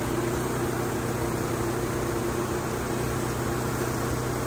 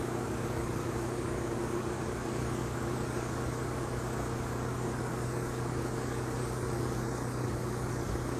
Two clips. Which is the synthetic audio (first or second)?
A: second